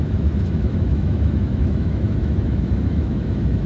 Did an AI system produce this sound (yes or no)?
yes